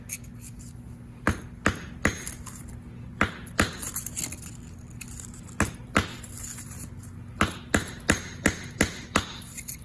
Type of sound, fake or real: real